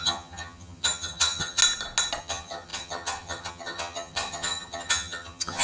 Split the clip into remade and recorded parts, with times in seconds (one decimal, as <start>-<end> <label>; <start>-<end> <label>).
0.0-1.6 remade; 1.6-2.2 recorded; 2.2-5.6 remade